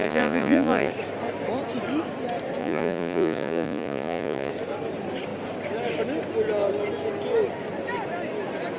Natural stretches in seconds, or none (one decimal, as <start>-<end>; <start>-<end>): 0.9-2.6; 4.5-8.8